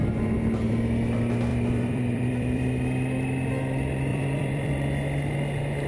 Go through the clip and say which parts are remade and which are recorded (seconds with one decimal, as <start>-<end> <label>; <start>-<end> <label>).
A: 0.0-1.5 recorded; 1.5-2.7 remade; 2.7-4.1 recorded; 4.1-4.7 remade; 4.7-5.9 recorded